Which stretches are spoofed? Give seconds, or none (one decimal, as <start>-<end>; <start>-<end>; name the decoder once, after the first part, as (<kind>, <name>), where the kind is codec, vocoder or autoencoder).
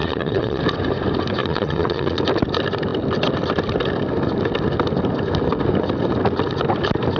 0.0-0.6 (vocoder, Vocos); 1.4-2.2